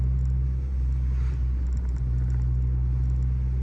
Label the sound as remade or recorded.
recorded